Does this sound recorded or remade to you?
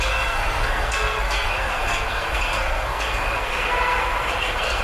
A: remade